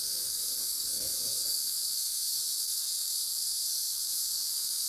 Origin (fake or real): fake